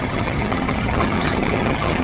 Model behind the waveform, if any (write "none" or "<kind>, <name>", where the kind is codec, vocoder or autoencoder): vocoder, HiFi-GAN